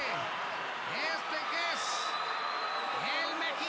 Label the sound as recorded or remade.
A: recorded